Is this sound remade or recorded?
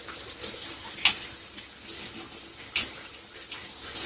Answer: recorded